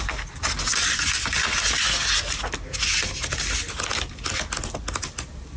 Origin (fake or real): real